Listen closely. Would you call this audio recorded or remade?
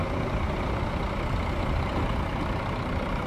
recorded